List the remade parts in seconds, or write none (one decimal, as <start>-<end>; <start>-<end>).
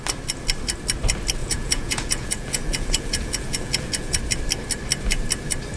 1.4-4.2